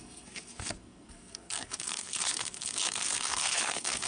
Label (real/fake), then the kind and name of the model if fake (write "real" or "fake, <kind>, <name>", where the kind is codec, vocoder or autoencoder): fake, codec, SNAC